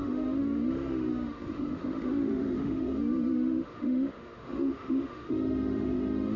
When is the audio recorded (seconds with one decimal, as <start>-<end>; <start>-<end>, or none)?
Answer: none